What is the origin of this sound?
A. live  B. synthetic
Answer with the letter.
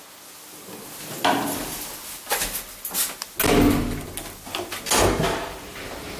A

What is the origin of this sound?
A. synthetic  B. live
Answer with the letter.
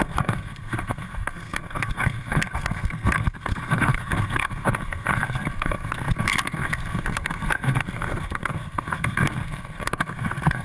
A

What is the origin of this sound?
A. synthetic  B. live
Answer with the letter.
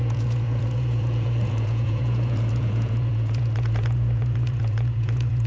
A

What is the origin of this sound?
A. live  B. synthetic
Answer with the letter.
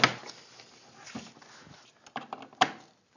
A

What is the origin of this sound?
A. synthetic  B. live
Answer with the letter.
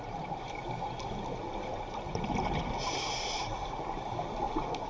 B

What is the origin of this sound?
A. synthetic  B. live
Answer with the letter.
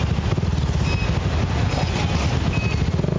B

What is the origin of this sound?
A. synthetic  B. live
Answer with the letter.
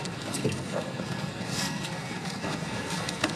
A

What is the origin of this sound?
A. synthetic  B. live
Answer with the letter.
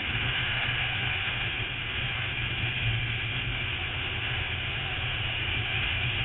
A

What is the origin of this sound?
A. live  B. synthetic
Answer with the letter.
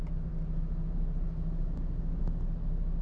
A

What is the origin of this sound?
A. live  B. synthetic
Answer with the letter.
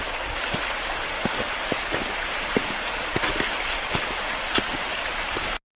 A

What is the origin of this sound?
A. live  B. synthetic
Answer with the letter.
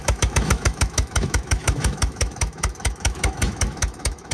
B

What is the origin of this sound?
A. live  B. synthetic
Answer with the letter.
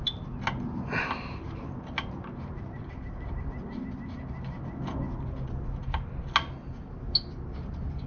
A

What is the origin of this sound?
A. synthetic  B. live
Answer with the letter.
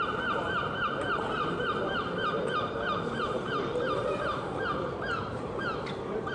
A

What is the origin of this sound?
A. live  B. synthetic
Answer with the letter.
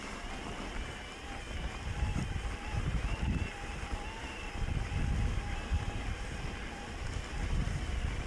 A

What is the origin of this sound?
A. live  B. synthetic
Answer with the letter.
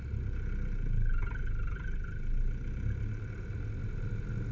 A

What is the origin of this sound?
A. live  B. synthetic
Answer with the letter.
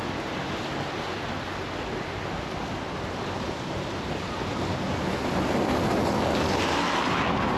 A